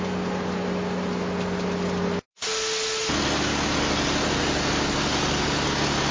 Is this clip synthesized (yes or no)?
no